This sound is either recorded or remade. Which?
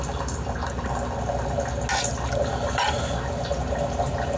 recorded